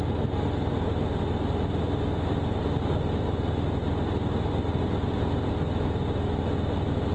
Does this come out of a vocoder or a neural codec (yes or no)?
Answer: no